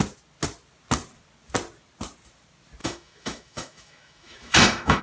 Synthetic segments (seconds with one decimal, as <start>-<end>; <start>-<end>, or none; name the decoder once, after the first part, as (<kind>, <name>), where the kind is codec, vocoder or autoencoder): 2.8-5.0 (autoencoder, DAC-VAE)